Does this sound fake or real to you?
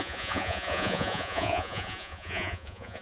fake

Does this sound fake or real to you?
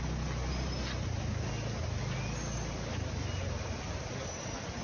real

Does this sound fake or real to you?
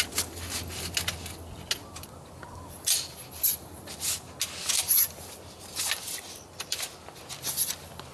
real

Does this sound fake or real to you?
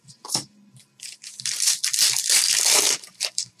fake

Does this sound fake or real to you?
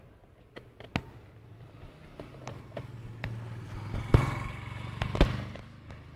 real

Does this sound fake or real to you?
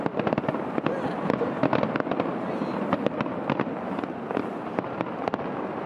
real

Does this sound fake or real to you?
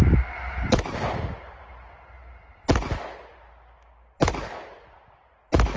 real